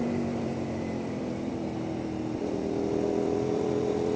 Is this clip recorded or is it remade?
remade